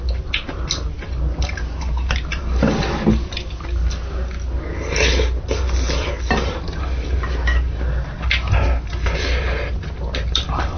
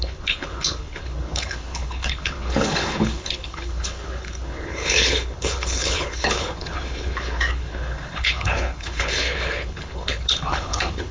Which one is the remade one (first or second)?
second